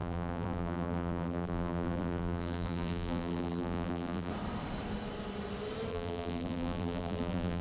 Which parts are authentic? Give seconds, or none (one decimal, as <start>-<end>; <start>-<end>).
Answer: 4.3-5.9